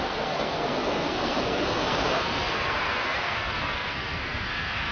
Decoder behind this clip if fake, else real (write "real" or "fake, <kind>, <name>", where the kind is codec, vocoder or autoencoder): fake, codec, SNAC